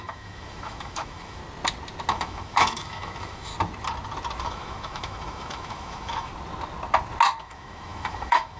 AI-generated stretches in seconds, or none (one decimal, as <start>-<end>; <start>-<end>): 0.0-1.4; 2.1-3.5; 4.4-6.3; 7.4-8.6